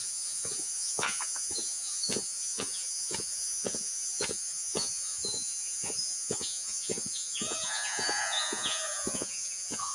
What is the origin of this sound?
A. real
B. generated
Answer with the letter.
B